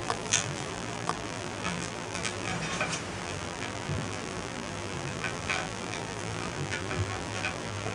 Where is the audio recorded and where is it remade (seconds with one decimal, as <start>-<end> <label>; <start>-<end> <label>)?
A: 0.0-2.5 remade; 2.5-3.2 recorded; 3.2-7.9 remade